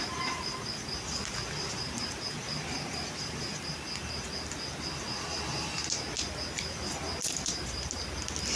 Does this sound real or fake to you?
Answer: real